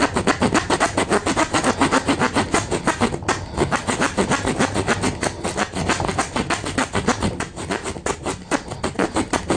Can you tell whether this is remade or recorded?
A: recorded